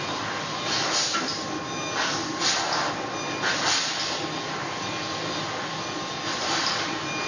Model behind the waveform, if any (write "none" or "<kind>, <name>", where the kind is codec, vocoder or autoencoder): none